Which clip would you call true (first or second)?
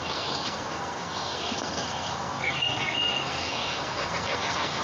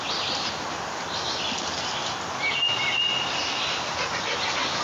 second